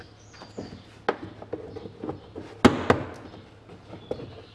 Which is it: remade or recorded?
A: recorded